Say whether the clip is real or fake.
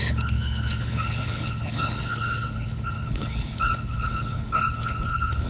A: fake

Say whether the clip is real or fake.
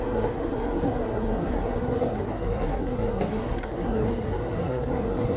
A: fake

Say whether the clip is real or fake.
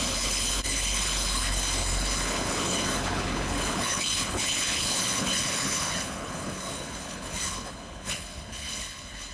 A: fake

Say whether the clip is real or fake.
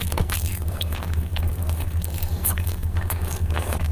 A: fake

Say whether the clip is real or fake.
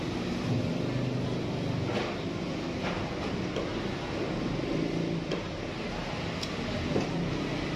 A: real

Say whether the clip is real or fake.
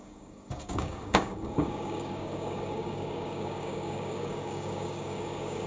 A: fake